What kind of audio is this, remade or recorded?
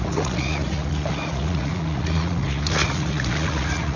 remade